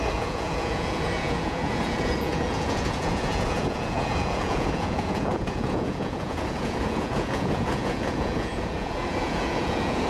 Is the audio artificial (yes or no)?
yes